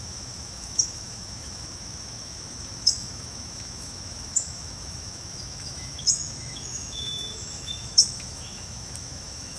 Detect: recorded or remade remade